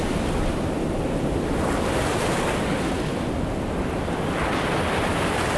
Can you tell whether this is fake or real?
real